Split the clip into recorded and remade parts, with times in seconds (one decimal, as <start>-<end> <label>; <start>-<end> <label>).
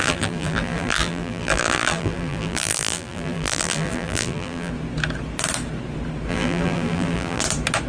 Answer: 0.0-4.7 remade; 4.7-6.3 recorded; 6.3-7.4 remade; 7.4-7.9 recorded